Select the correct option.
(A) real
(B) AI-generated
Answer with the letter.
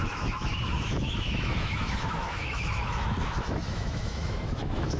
B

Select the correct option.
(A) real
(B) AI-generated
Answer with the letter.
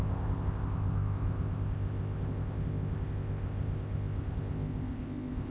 B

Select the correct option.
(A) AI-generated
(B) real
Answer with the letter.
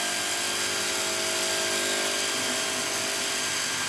B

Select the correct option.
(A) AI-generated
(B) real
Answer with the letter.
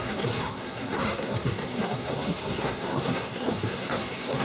A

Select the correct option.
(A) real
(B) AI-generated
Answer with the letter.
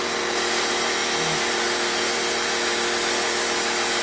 A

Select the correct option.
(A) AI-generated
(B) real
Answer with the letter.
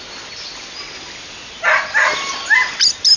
B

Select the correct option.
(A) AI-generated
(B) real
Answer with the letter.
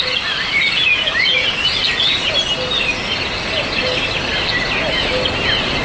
B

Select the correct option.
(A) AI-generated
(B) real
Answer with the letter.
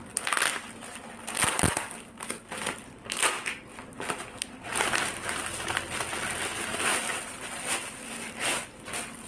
B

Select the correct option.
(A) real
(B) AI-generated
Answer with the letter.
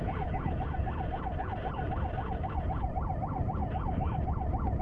A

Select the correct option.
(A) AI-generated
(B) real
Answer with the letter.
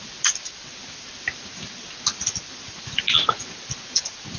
B